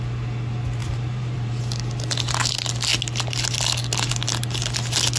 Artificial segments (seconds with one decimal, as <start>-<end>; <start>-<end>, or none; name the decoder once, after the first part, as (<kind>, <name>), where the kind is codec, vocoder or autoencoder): 0.8-1.6 (vocoder, BigVGAN v2)